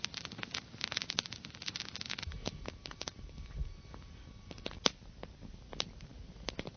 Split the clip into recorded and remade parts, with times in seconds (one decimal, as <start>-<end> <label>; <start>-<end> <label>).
0.0-6.8 recorded